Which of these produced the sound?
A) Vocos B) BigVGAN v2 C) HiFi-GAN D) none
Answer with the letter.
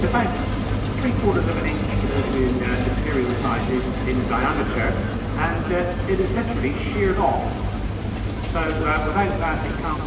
D